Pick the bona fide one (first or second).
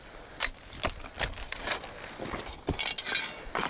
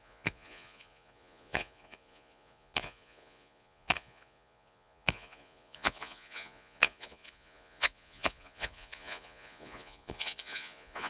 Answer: first